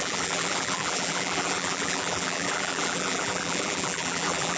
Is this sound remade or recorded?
remade